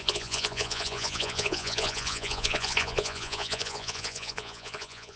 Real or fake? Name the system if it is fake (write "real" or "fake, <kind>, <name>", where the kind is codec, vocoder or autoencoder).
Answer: fake, vocoder, Vocos